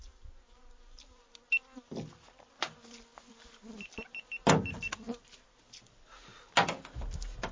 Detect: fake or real real